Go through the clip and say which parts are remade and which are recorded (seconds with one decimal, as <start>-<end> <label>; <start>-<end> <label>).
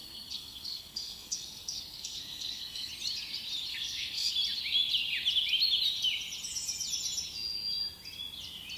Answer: 0.0-2.9 remade; 2.9-3.7 recorded; 3.7-4.3 remade; 4.3-8.8 recorded